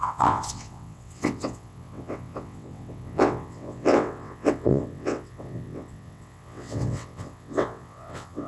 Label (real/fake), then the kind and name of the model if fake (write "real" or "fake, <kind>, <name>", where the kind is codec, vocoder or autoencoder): fake, vocoder, WaveNeXt